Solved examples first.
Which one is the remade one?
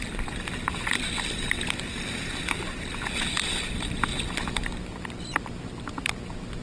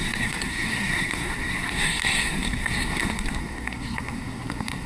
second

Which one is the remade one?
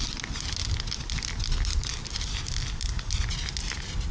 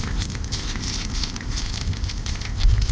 second